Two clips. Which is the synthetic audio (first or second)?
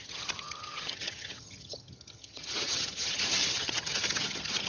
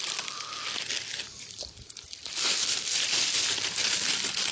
first